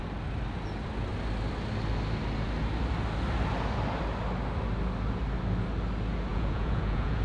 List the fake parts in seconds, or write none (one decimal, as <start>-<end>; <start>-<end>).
6.3-7.2